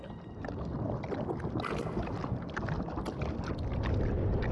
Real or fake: real